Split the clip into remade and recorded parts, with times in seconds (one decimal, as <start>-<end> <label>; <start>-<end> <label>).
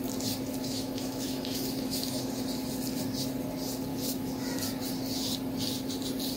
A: 0.0-0.6 recorded; 0.6-2.3 remade; 2.3-3.9 recorded; 3.9-4.4 remade; 4.4-6.4 recorded